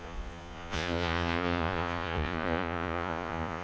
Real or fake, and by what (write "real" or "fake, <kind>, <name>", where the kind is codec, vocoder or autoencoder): fake, vocoder, Vocos